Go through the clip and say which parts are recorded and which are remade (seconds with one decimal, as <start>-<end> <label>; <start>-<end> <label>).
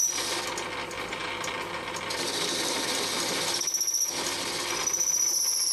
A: 0.0-5.7 recorded